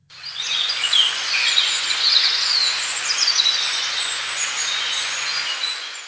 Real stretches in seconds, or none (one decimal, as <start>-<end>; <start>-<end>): none